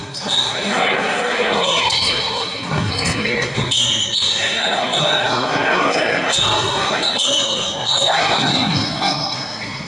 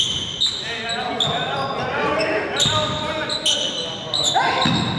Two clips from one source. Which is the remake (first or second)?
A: first